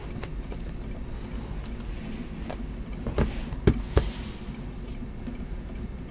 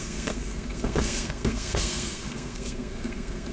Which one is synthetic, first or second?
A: second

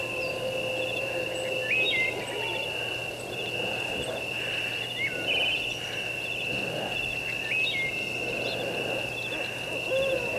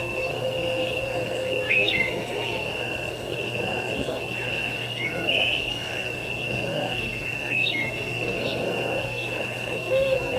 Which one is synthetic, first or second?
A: second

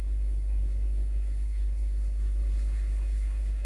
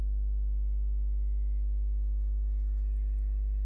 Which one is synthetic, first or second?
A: first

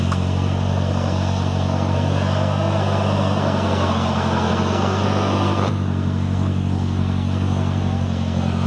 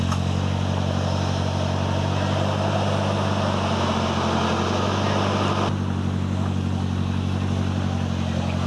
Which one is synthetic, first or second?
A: first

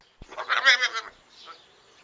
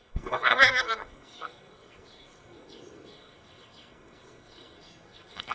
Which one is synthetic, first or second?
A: second